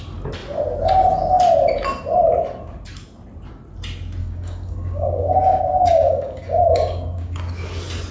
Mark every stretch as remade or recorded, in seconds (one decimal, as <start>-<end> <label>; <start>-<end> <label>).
0.0-4.2 recorded; 4.2-7.4 remade; 7.4-8.1 recorded